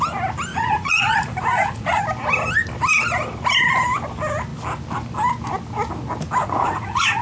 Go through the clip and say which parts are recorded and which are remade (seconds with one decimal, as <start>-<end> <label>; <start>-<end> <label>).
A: 0.0-0.5 recorded; 0.5-2.0 remade; 2.0-6.4 recorded; 6.4-7.2 remade